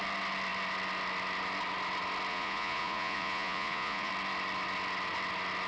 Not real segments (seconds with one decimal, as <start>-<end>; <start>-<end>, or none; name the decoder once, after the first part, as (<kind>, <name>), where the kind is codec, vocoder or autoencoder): 2.3-4.1 (vocoder, Vocos)